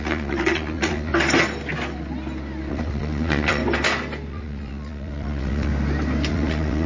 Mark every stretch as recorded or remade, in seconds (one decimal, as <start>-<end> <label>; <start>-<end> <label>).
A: 0.0-1.1 remade; 1.1-2.7 recorded; 2.7-3.6 remade; 3.6-4.3 recorded; 4.3-5.7 remade; 5.7-6.3 recorded; 6.3-6.9 remade